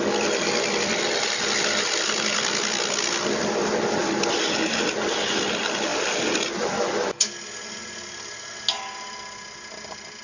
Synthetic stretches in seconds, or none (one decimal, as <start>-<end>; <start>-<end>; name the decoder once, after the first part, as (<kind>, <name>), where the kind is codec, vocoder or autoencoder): none